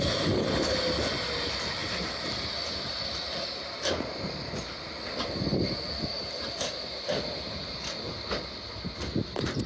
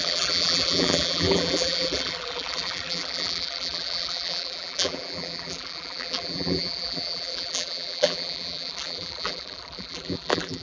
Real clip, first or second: first